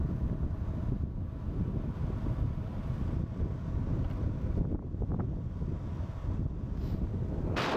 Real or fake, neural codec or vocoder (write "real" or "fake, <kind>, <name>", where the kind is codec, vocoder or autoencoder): real